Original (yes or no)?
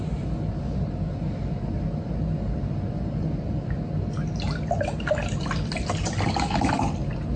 yes